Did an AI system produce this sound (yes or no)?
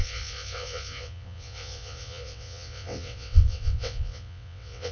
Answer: yes